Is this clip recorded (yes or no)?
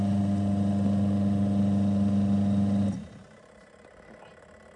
yes